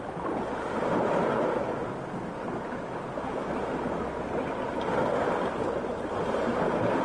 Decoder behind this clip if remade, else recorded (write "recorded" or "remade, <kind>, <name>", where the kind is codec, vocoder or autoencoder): recorded